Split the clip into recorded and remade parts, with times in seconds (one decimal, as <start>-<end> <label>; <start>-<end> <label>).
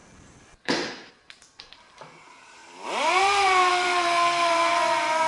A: 0.0-5.3 remade